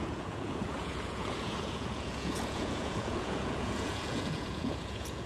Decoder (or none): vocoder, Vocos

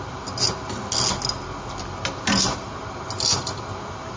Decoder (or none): none